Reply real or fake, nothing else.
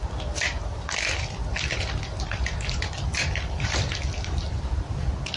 fake